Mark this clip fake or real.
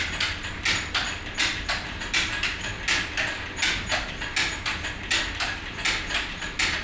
real